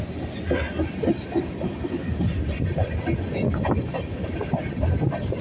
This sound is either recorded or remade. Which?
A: recorded